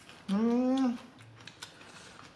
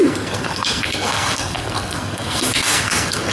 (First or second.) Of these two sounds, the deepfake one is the second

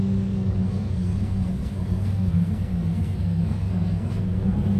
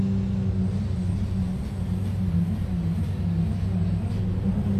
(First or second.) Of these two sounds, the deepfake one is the first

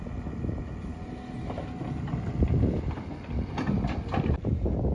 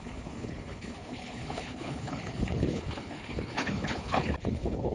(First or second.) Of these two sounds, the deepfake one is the second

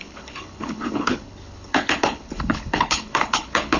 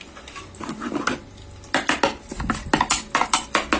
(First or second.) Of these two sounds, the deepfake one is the first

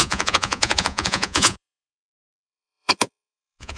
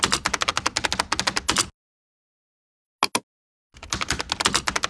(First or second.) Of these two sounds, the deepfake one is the first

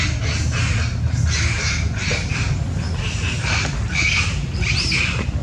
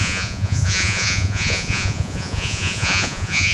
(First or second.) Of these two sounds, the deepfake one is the second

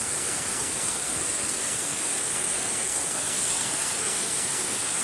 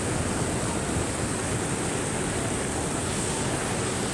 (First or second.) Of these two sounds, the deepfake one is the first